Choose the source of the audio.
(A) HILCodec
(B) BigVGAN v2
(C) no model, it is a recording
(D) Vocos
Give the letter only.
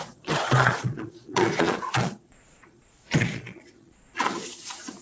D